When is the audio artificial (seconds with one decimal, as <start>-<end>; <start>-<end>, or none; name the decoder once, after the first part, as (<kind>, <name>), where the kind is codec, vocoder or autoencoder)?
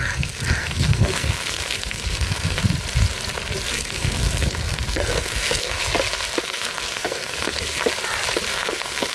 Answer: 0.0-2.6 (codec, SNAC); 3.7-5.8; 6.4-7.8; 8.5-9.1